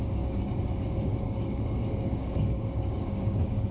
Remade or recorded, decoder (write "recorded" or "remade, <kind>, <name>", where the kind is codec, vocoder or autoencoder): remade, codec, DAC